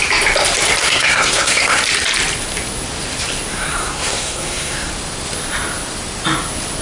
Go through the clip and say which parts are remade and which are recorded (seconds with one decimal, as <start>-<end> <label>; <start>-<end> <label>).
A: 0.0-0.8 recorded; 0.8-1.8 remade; 1.8-3.5 recorded; 3.5-4.9 remade; 4.9-6.8 recorded